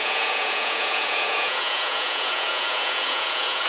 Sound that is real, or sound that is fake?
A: fake